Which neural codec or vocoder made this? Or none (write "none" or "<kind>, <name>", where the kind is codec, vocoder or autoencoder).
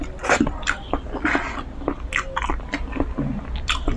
none